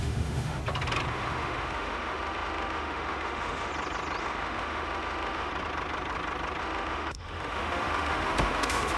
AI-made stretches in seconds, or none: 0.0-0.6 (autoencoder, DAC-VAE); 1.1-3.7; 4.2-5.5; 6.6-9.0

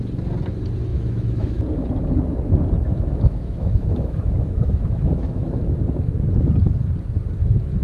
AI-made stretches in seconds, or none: 0.9-1.6 (autoencoder, DAC-VAE); 2.9-5.7

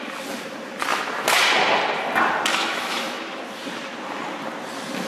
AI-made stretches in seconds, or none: 0.9-1.4 (autoencoder, DAC-VAE); 2.5-3.4

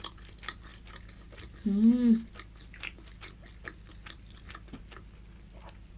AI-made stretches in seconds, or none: none

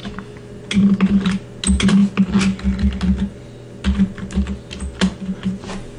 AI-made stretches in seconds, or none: 0.0-0.5 (autoencoder, DAC-VAE)

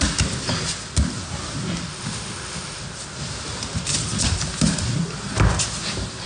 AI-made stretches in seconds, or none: 1.9-2.8 (autoencoder, DAC-VAE)